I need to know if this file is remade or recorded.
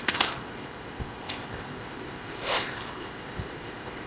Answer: remade